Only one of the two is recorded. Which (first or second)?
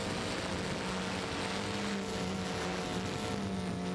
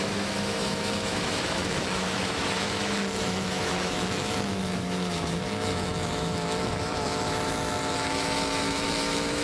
first